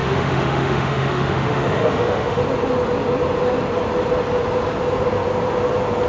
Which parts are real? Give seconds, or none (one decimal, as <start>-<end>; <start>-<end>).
2.4-6.1